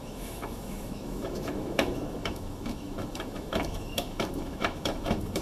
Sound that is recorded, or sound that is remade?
remade